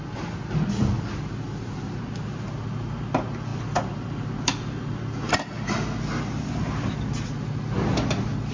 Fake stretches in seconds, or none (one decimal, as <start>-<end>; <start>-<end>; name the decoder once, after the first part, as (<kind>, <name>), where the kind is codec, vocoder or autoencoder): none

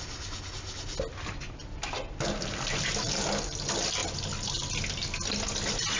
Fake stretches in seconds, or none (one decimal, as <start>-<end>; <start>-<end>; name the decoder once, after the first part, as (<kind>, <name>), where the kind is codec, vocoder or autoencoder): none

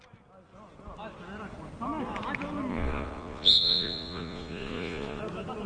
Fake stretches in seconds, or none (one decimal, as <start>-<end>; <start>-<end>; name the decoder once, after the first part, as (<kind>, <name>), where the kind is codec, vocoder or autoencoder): 2.7-5.2 (vocoder, Vocos)

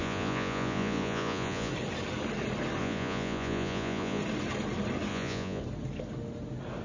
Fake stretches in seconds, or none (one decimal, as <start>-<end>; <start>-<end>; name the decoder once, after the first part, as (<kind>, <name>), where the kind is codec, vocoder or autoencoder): 0.0-1.7 (vocoder, Vocos); 2.8-4.2; 5.1-5.6

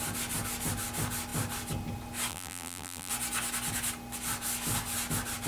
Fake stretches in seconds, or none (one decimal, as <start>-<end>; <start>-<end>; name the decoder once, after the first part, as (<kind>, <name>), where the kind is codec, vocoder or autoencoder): 2.3-3.1 (vocoder, BigVGAN v2)

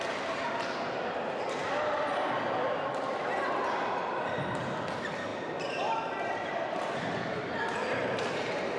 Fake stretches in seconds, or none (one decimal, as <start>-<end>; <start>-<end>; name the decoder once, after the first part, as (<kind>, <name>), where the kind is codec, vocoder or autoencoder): none